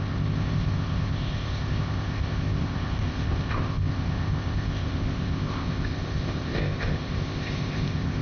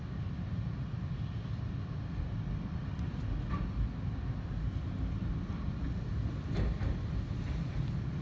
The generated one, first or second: first